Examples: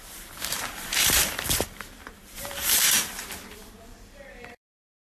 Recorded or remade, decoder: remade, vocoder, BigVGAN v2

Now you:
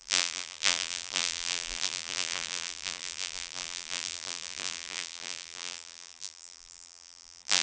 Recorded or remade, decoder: remade, vocoder, BigVGAN v2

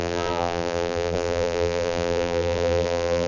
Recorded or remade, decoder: remade, vocoder, BigVGAN v2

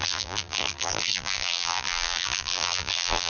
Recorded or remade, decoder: remade, vocoder, BigVGAN v2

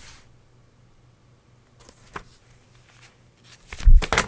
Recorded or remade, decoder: recorded